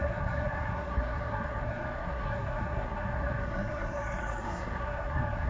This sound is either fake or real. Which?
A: fake